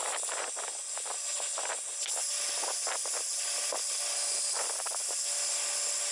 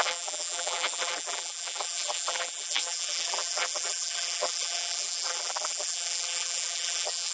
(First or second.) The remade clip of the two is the second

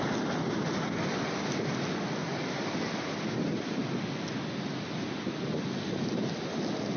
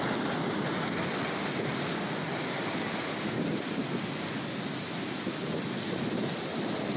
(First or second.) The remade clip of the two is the second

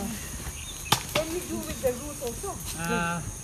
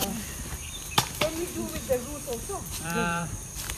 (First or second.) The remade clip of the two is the second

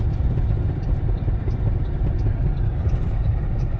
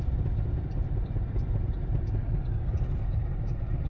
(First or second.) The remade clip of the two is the first